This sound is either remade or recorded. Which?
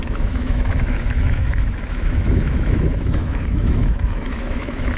remade